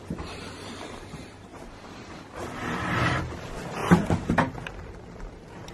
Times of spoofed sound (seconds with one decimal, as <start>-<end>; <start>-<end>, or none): 0.0-1.5; 3.0-3.8; 5.3-5.7